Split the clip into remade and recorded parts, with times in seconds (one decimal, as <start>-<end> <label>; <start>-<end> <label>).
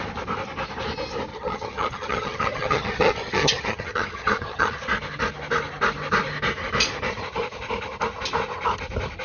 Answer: 0.0-1.3 recorded; 1.3-4.7 remade; 4.7-9.2 recorded